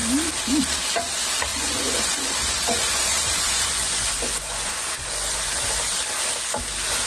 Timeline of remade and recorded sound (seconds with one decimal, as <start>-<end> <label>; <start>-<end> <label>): 0.0-1.5 recorded; 1.5-5.8 remade; 5.8-7.1 recorded